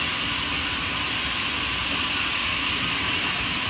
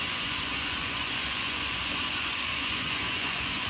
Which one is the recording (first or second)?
first